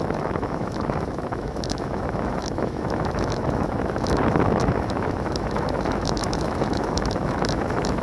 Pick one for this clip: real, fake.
fake